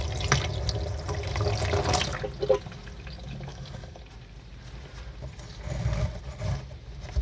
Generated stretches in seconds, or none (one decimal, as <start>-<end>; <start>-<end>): 3.5-4.0